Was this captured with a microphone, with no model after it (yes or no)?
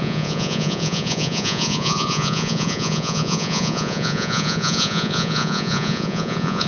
no